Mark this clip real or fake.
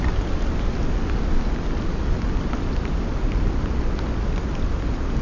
real